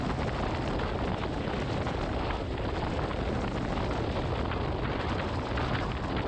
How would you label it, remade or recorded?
recorded